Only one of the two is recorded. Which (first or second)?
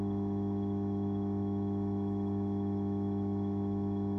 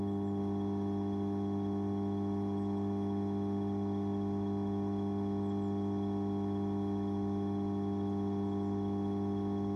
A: second